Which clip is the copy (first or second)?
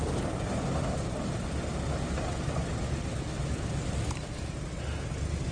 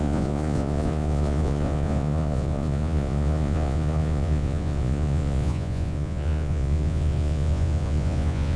second